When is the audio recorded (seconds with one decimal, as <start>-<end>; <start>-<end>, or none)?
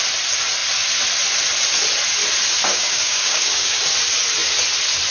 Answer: 0.0-2.7; 3.8-5.1